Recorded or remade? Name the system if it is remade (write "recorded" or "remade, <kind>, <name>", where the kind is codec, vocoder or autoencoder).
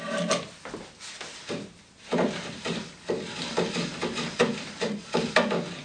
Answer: recorded